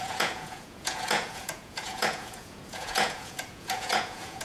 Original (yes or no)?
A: no